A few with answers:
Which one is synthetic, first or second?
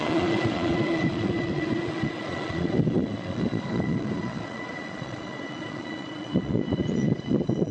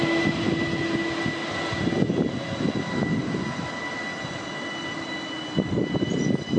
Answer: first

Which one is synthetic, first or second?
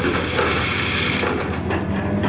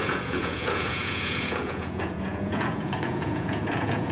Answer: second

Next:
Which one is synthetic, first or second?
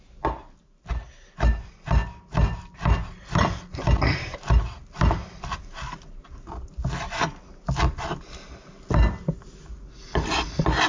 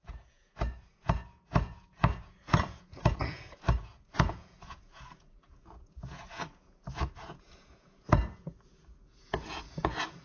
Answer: second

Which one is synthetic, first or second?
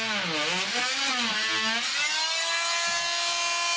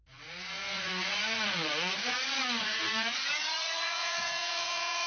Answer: second